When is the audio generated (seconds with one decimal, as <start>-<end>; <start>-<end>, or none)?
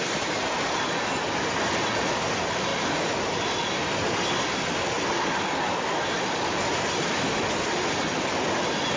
none